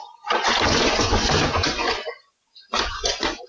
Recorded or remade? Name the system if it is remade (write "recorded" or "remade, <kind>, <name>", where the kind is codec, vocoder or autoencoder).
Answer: remade, vocoder, Vocos